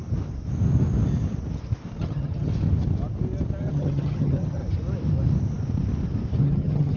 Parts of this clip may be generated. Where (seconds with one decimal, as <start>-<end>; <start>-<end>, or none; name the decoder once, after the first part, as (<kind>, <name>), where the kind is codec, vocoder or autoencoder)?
2.0-2.5 (vocoder, HiFi-GAN); 3.6-4.6; 6.4-7.0